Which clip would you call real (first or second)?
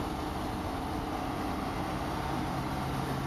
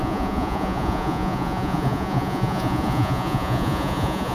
first